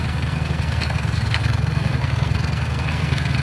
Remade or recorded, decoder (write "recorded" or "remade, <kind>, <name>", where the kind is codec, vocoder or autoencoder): remade, codec, SNAC